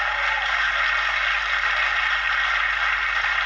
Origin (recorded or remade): recorded